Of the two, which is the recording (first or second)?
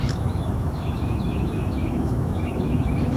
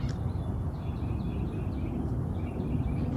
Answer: second